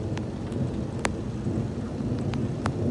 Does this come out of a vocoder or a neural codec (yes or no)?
no